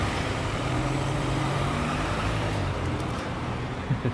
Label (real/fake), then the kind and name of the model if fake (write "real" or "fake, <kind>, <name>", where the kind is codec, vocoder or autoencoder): fake, vocoder, BigVGAN v2